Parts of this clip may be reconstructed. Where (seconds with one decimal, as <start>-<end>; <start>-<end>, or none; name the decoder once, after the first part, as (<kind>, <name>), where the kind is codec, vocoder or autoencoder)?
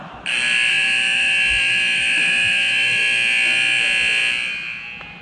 0.7-3.8 (autoencoder, DAC-VAE)